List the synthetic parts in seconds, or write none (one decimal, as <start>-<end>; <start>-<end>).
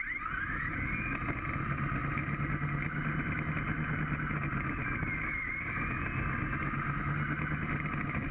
none